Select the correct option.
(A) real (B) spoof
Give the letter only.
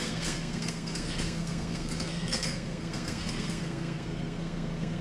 B